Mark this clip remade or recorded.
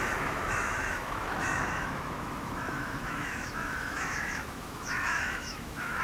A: remade